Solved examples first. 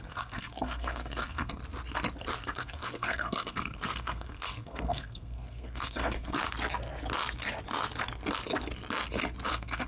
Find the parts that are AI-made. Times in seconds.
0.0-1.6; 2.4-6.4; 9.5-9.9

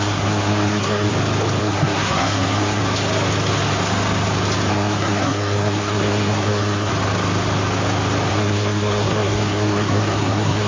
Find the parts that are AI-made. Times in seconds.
0.0-1.1; 1.6-2.8; 4.7-6.9; 8.3-10.7

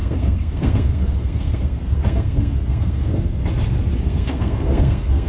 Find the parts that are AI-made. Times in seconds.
0.0-3.4; 4.0-5.3

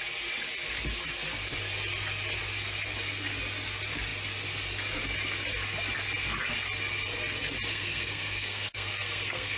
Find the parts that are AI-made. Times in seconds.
7.7-9.6

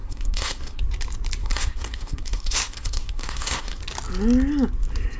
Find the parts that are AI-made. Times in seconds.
0.0-0.8; 1.4-3.8

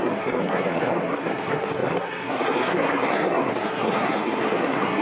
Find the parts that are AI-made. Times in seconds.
0.0-5.0

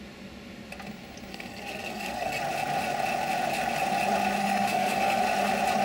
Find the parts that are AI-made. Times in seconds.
1.3-2.4; 4.4-5.2

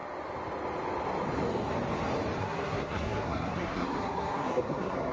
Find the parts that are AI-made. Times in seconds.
2.4-5.1